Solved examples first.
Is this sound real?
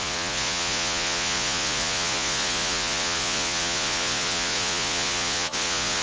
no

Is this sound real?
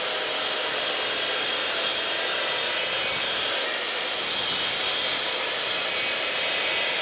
yes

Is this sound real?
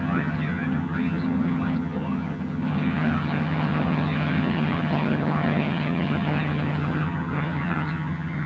no